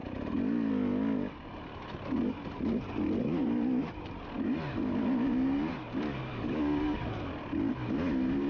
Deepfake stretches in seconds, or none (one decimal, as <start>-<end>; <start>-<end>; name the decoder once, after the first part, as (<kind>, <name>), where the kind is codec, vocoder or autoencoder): 6.3-7.0 (codec, DAC)